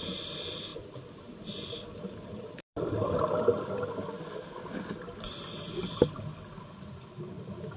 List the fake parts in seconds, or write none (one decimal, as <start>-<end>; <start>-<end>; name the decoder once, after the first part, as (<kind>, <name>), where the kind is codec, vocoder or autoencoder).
none